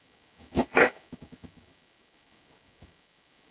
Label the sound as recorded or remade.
remade